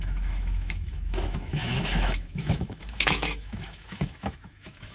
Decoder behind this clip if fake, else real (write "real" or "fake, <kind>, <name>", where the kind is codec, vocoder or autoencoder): fake, autoencoder, DAC-VAE